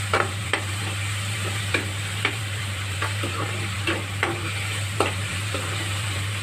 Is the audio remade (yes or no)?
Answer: yes